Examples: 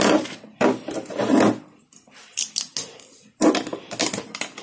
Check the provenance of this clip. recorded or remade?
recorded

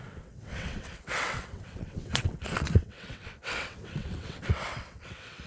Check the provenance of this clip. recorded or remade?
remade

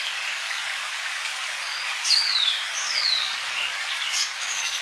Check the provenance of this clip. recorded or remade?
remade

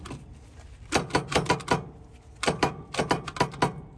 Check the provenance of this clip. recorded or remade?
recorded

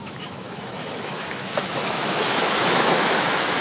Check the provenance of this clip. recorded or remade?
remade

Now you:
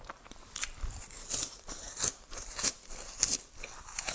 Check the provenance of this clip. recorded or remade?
recorded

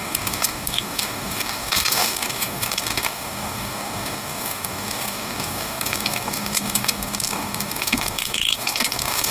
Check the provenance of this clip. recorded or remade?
remade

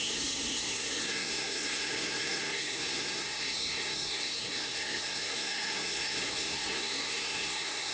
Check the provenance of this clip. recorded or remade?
remade